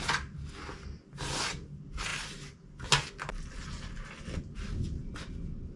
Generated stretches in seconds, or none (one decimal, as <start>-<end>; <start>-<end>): none